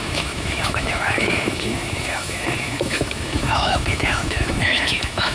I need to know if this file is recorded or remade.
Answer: remade